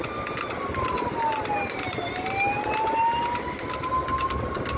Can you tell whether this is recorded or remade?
recorded